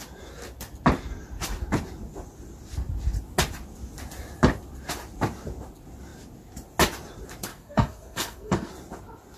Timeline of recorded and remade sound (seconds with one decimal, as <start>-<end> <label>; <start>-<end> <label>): 0.0-7.5 recorded; 7.5-8.7 remade; 8.7-9.4 recorded